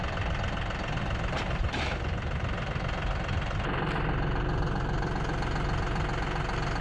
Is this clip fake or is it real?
real